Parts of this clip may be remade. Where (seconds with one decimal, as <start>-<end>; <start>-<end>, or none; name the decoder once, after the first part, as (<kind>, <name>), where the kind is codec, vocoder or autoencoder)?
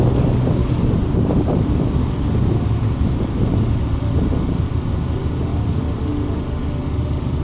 0.6-1.7 (vocoder, BigVGAN v2); 5.5-6.1